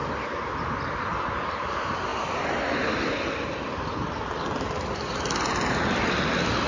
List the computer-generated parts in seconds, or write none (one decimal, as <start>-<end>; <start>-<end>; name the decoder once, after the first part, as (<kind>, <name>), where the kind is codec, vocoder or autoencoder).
none